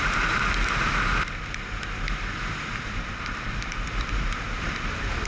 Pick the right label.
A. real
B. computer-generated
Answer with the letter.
B